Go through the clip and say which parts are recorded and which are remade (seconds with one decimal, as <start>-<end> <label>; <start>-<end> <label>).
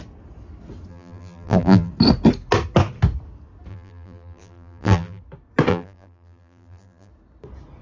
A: 0.0-0.9 recorded; 0.9-1.9 remade; 1.9-3.7 recorded; 3.7-5.2 remade; 5.2-5.7 recorded; 5.7-7.1 remade; 7.1-7.8 recorded